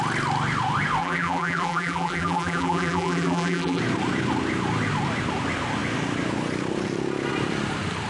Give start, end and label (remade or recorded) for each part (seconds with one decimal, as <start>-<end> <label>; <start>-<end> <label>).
0.0-1.0 recorded; 1.0-3.8 remade; 3.8-8.1 recorded